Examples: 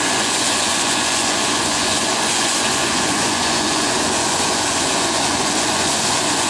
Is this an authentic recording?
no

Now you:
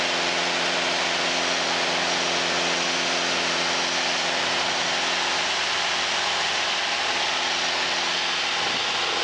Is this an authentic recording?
yes